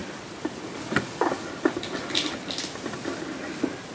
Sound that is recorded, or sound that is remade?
recorded